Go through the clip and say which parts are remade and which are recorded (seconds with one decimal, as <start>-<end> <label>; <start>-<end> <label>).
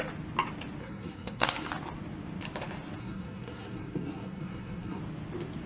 0.0-0.8 recorded; 0.8-1.7 remade; 1.7-3.0 recorded; 3.0-5.0 remade; 5.0-5.7 recorded